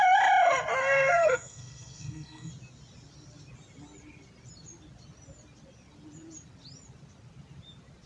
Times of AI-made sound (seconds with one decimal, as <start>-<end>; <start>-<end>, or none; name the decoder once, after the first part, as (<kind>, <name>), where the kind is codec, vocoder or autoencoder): 0.8-2.5 (codec, SNAC)